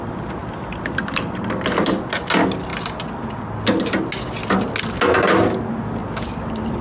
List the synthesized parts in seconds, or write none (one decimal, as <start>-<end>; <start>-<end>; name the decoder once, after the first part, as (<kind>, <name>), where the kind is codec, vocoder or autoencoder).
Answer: 0.4-1.4 (vocoder, BigVGAN v2); 6.0-6.8